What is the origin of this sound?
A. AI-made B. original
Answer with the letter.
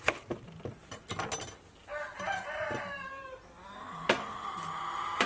B